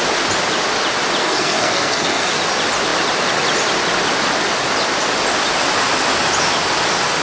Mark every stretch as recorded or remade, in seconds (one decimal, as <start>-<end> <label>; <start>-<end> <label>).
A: 0.0-1.2 recorded; 1.2-2.3 remade; 2.3-7.2 recorded